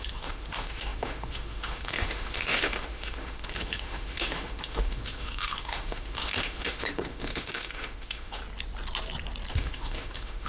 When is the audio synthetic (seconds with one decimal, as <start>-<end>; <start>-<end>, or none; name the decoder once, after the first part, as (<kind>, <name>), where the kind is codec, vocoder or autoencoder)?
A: 0.0-8.4 (autoencoder, DAC-VAE); 9.5-10.5